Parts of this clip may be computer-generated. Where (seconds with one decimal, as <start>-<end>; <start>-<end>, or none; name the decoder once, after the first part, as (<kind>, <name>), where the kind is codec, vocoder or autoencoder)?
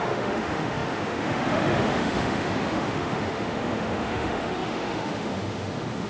0.0-6.1 (autoencoder, DAC-VAE)